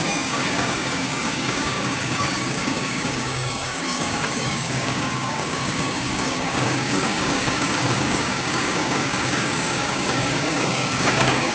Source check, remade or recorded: remade